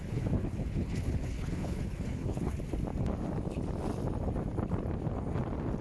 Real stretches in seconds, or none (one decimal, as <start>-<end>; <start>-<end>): 2.5-5.8